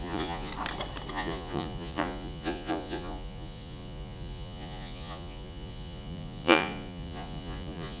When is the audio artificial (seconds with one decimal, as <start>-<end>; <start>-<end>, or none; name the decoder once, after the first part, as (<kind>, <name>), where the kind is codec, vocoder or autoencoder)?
0.0-0.5 (vocoder, Vocos); 1.1-8.0